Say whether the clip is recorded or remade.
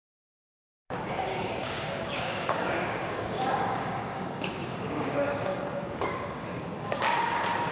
remade